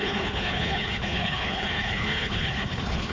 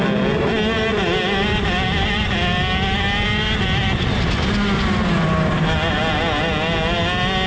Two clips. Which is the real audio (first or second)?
second